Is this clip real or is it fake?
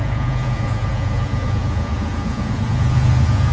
fake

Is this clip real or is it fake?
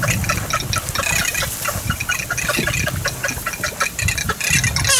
real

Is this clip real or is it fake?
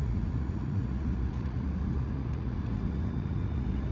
fake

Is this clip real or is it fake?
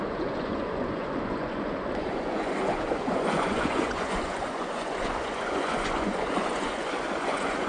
fake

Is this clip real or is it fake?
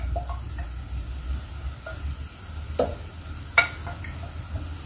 real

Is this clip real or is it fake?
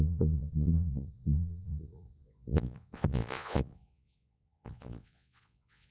fake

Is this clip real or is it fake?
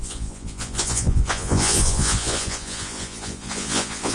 fake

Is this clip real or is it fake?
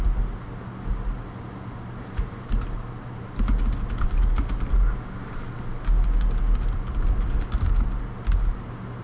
real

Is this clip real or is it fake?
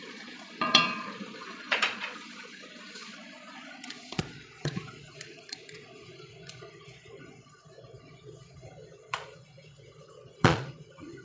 fake